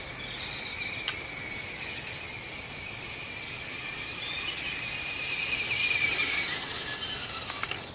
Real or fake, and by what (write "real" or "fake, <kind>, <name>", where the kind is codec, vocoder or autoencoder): real